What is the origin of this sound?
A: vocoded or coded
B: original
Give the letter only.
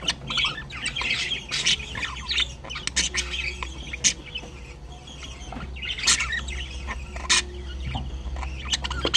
B